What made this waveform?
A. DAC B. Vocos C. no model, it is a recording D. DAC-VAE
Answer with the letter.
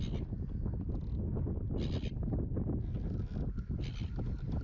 C